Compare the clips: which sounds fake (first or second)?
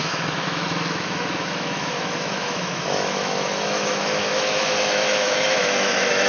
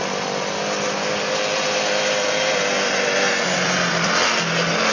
first